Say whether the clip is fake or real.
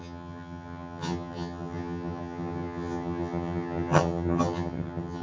fake